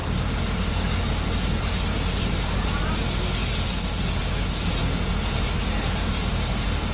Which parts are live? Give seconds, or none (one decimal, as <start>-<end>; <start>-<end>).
0.0-6.9